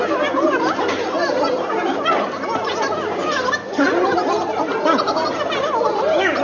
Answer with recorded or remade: recorded